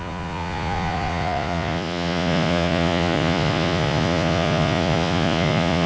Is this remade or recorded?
remade